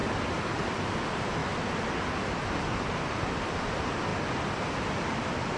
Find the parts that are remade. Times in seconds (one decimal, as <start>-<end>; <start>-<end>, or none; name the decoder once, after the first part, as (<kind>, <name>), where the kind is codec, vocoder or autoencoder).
none